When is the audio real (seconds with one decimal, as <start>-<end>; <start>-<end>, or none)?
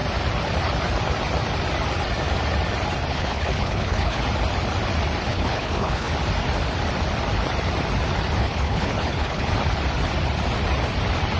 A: 0.0-3.1; 4.2-5.3; 6.1-8.4; 9.5-11.4